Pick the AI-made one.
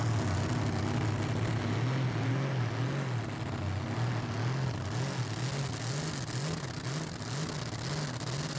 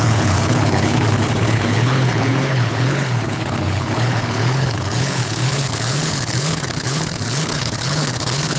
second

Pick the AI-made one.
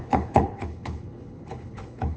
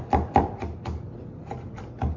first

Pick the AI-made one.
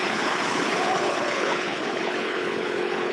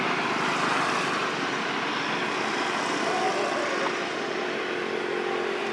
first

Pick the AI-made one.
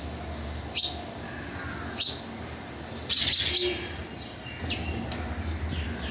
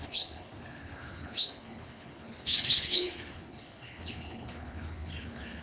second